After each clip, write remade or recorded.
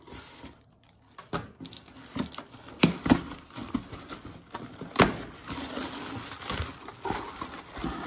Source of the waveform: recorded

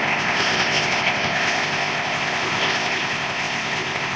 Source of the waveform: remade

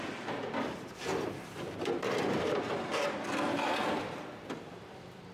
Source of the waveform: remade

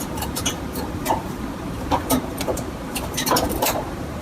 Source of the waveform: remade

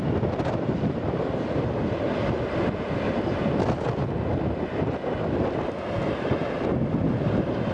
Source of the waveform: recorded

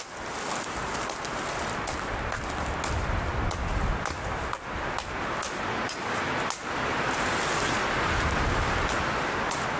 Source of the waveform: recorded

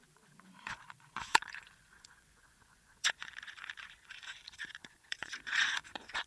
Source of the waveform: remade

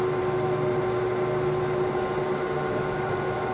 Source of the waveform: remade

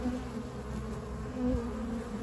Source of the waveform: recorded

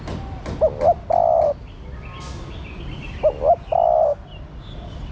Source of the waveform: recorded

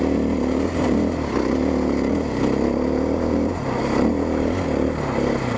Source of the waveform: recorded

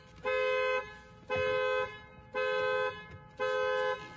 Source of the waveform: recorded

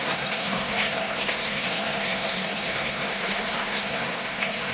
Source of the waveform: remade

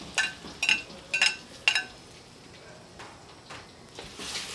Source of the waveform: recorded